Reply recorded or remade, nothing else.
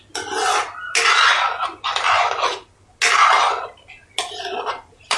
recorded